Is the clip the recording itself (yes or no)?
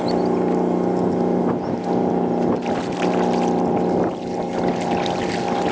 yes